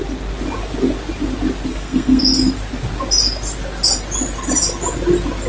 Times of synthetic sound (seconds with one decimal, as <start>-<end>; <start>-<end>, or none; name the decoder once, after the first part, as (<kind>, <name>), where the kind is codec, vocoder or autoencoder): 1.7-2.2 (codec, SNAC)